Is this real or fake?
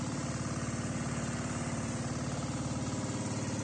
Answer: real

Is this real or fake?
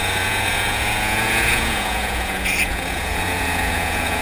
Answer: fake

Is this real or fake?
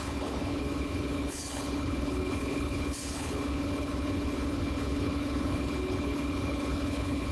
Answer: fake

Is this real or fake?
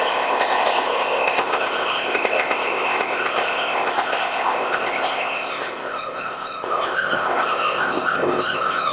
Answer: fake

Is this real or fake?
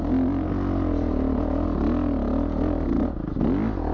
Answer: real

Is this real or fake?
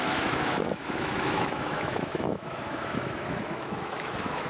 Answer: fake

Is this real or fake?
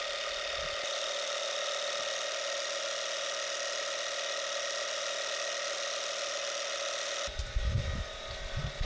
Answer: real